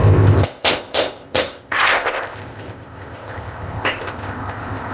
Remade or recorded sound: remade